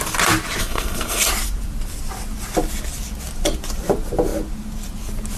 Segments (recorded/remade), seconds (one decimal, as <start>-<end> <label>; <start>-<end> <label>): 0.0-0.6 recorded; 0.6-1.3 remade; 1.3-5.4 recorded